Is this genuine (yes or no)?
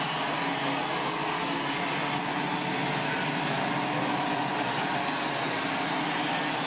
yes